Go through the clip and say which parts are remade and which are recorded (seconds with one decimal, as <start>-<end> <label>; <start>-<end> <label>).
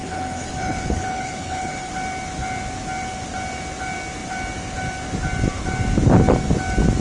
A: 0.0-1.9 remade; 1.9-7.0 recorded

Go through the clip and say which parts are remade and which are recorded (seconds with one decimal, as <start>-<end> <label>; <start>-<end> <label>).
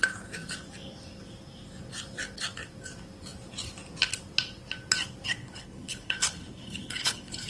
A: 0.0-5.4 recorded; 5.4-7.5 remade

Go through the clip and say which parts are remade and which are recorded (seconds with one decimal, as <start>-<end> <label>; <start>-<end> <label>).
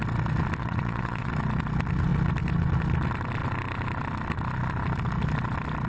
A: 0.0-0.6 recorded; 0.6-1.3 remade; 1.3-5.9 recorded